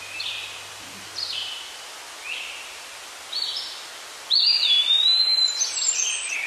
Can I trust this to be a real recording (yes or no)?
yes